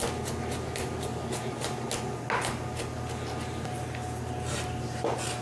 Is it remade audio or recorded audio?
recorded